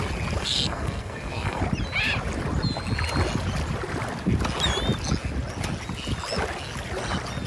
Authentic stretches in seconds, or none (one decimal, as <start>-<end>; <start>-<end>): 0.0-0.4; 1.6-7.5